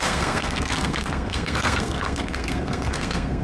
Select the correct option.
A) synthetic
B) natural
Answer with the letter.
A